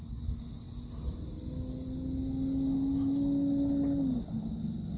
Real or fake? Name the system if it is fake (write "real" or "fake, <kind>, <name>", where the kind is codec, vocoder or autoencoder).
real